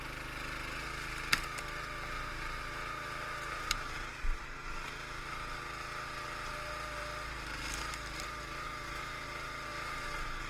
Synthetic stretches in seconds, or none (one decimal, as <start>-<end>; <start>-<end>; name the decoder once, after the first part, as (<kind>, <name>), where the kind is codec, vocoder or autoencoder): none